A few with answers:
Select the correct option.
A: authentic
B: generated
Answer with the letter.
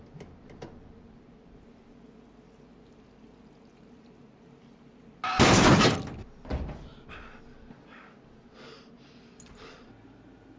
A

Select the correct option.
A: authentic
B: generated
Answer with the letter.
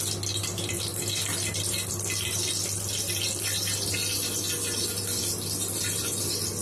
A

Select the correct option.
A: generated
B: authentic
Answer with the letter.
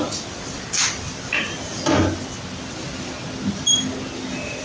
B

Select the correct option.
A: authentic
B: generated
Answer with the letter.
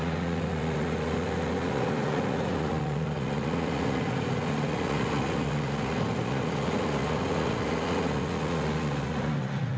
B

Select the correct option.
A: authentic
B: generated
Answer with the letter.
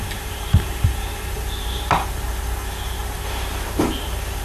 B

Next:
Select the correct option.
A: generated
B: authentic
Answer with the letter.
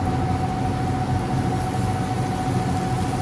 B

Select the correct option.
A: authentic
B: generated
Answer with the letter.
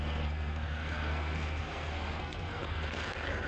B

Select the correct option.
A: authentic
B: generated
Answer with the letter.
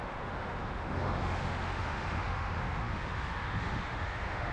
B